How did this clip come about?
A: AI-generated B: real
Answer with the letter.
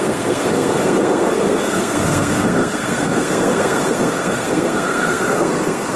A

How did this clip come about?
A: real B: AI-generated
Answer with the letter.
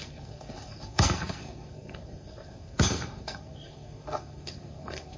B